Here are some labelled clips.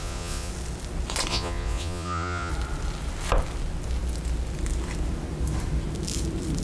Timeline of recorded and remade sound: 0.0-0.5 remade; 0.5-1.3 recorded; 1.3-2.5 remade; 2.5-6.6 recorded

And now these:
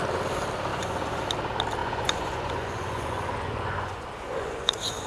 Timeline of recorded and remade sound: 0.0-0.7 recorded; 0.7-1.2 remade; 1.2-1.8 recorded; 1.8-5.1 remade

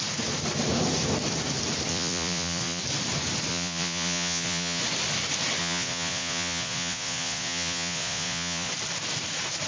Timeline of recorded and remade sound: 0.0-1.9 recorded; 1.9-2.8 remade; 2.8-3.5 recorded; 3.5-4.8 remade; 4.8-5.6 recorded; 5.6-8.7 remade; 8.7-9.7 recorded

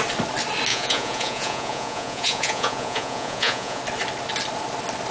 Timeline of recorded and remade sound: 0.0-0.7 recorded; 0.7-3.8 remade; 3.8-5.1 recorded

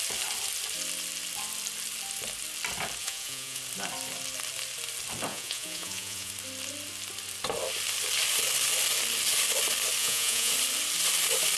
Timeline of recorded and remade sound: 0.0-3.0 recorded; 3.0-3.6 remade; 3.6-5.3 recorded; 5.3-6.3 remade; 6.3-10.0 recorded; 10.0-10.5 remade; 10.5-11.6 recorded

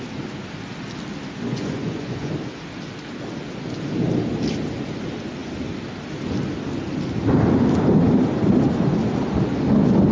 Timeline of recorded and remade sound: 0.0-1.5 recorded; 1.5-2.3 remade; 2.3-10.1 recorded